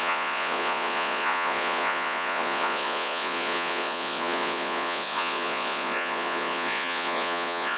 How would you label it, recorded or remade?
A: remade